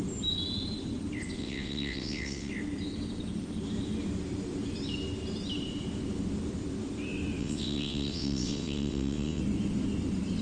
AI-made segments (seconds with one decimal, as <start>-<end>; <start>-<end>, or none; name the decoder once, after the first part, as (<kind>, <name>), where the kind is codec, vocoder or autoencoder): 1.4-2.5 (vocoder, WaveNeXt); 7.4-9.4